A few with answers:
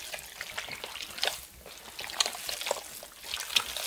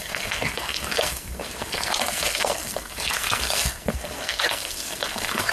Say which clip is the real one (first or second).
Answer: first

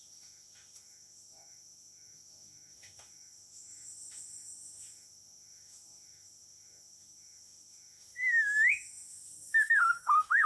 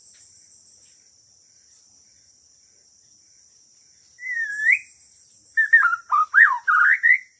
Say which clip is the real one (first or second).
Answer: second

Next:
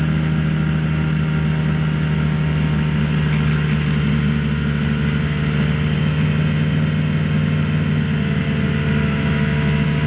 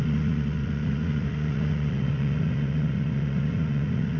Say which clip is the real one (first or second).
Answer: first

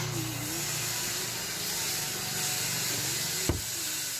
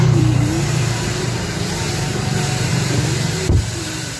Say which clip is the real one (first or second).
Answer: first